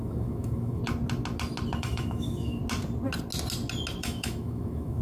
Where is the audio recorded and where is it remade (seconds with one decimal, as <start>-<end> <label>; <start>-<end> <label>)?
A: 0.0-0.8 remade; 0.8-1.8 recorded; 1.8-2.6 remade; 2.6-4.0 recorded; 4.0-5.0 remade